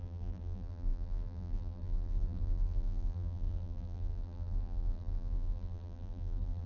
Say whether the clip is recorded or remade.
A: remade